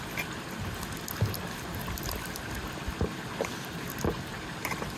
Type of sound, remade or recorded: recorded